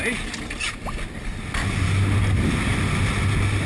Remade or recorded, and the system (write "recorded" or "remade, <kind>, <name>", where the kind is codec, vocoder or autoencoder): recorded